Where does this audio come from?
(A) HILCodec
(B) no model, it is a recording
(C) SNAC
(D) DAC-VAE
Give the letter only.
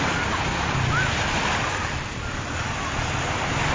B